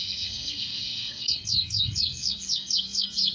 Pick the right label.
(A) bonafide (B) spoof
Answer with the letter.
B